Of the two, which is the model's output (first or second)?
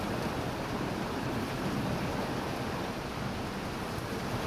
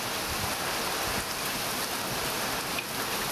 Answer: first